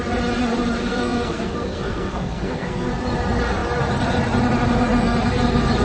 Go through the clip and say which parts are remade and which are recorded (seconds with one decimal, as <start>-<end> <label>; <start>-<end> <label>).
0.0-0.8 recorded; 0.8-2.9 remade; 2.9-5.8 recorded